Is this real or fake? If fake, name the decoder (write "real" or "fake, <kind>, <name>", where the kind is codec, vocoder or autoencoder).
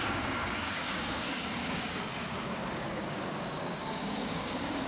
fake, codec, DAC